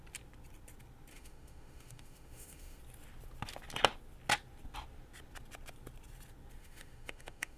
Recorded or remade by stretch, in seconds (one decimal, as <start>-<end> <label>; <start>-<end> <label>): 0.0-1.1 recorded; 1.1-2.8 remade; 2.8-6.6 recorded; 6.6-7.6 remade